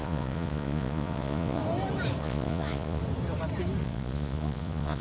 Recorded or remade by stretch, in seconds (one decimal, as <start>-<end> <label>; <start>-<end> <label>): 0.0-1.6 remade; 1.6-2.2 recorded; 2.2-3.0 remade; 3.0-3.8 recorded; 3.8-5.0 remade